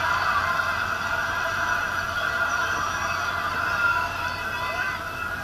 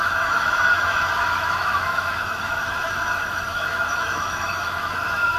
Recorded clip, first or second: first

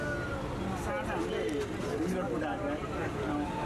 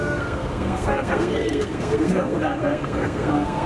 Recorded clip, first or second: first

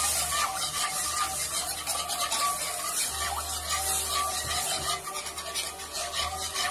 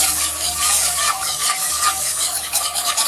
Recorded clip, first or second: first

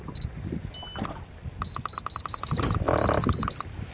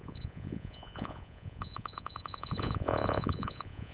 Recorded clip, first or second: first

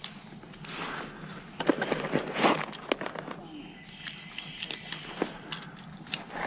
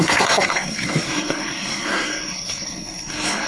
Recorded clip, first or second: first